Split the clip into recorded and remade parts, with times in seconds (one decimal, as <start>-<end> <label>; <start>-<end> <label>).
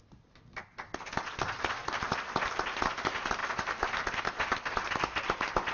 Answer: 0.0-3.4 recorded; 3.4-4.2 remade; 4.2-5.7 recorded